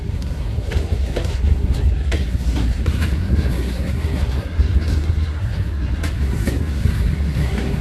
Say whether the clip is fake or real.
fake